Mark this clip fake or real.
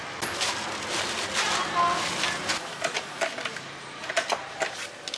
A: real